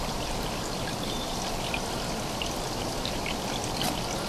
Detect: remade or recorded recorded